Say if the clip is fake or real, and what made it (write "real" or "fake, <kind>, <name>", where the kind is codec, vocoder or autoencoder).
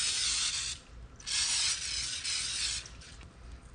real